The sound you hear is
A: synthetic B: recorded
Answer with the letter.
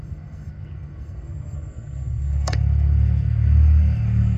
A